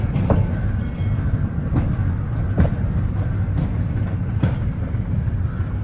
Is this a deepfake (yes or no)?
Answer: no